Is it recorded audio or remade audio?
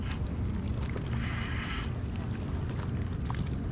recorded